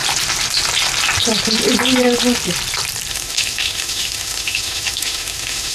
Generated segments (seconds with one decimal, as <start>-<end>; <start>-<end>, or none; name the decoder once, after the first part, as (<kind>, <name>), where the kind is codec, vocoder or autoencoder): 3.1-5.7 (autoencoder, DAC-VAE)